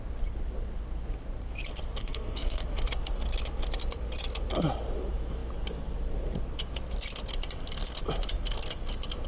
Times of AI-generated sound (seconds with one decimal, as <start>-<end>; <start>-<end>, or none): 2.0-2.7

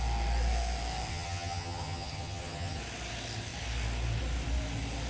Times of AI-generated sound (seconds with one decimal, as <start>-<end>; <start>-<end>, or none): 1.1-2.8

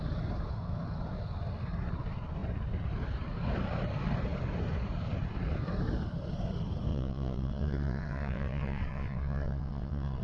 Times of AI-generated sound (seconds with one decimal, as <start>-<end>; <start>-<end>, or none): 6.9-10.2

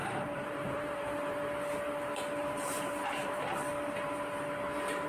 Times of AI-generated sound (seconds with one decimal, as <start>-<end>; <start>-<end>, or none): 0.0-1.1; 2.4-3.7

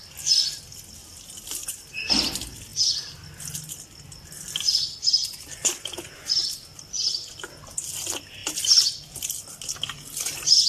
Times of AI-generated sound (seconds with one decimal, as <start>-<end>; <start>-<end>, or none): none

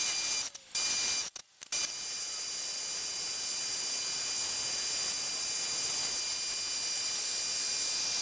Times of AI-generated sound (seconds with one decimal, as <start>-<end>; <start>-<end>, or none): none